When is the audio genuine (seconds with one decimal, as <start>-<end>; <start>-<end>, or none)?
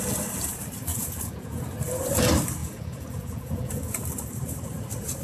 0.0-0.9; 1.6-2.6; 4.0-5.2